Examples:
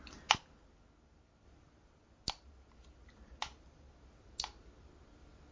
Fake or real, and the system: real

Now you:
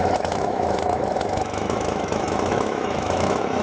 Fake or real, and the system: fake, autoencoder, DAC-VAE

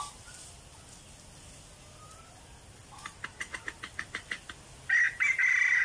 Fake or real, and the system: real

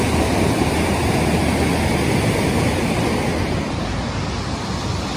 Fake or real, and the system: real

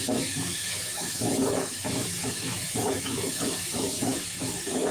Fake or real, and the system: fake, autoencoder, DAC-VAE